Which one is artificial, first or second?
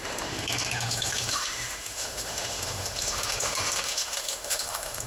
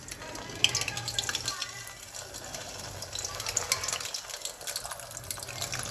first